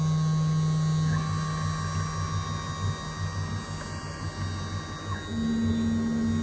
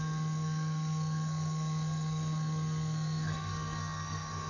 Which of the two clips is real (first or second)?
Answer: first